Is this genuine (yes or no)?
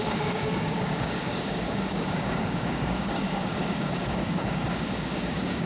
no